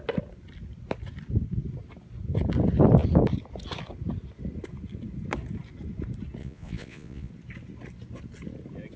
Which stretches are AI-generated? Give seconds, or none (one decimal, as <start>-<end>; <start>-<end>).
6.4-7.3